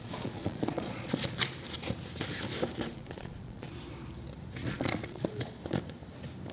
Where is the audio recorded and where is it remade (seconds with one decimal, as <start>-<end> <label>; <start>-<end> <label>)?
0.0-1.4 remade; 1.4-2.9 recorded; 2.9-3.7 remade; 3.7-4.6 recorded; 4.6-5.6 remade; 5.6-6.5 recorded